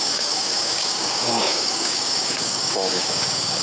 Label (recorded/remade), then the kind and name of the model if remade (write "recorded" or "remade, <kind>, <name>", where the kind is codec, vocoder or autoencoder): remade, codec, DAC